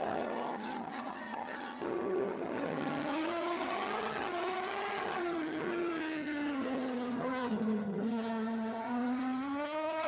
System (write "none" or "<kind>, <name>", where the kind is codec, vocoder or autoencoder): vocoder, HiFi-GAN